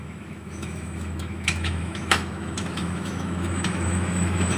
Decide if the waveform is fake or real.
fake